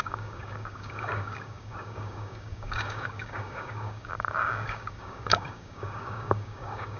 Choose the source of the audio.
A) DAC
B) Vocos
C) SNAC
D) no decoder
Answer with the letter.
A